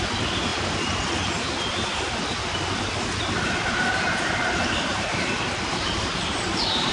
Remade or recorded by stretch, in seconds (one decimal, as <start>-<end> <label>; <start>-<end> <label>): 0.0-6.9 recorded